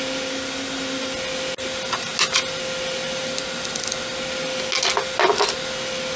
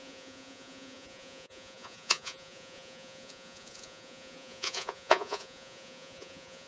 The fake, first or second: second